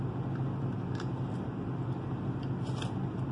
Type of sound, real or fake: real